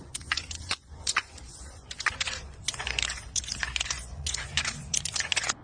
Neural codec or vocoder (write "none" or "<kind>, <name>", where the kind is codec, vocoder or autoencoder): vocoder, Vocos